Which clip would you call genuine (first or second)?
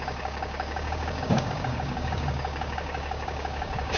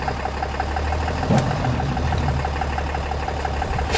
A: second